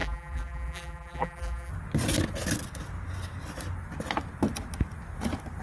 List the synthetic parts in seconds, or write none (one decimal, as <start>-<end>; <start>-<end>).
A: 0.0-1.7